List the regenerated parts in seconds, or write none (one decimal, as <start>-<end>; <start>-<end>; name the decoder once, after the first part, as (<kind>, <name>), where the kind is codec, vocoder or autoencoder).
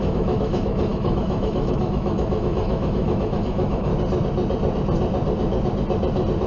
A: 0.0-3.9 (autoencoder, DAC-VAE)